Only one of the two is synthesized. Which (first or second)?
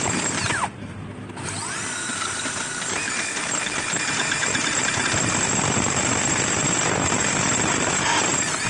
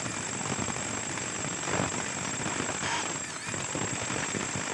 first